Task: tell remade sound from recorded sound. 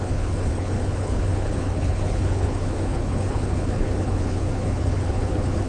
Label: remade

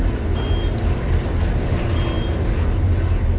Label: recorded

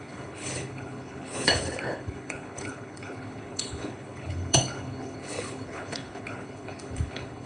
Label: remade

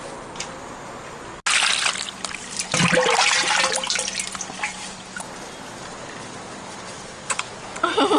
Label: recorded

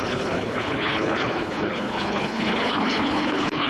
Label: remade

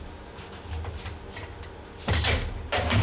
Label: recorded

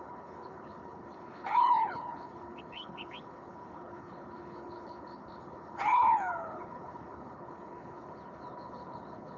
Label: remade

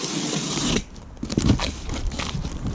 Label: recorded